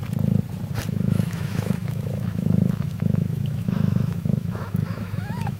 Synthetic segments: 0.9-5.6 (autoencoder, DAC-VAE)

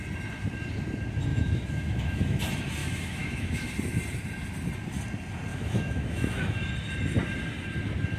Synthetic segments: 1.3-2.4 (autoencoder, DAC-VAE); 2.8-3.7; 5.5-6.6

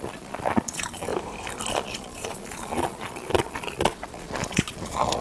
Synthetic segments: 0.0-1.1 (vocoder, Vocos); 1.7-5.2

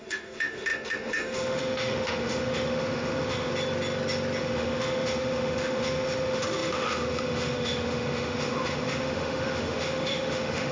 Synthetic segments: 0.0-3.5 (autoencoder, DAC-VAE); 4.4-10.7

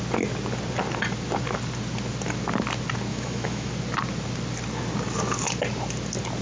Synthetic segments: 3.1-3.7 (autoencoder, DAC-VAE)